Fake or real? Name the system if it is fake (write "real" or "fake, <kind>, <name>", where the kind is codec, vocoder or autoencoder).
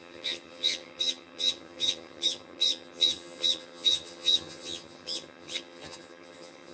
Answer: fake, vocoder, HiFi-GAN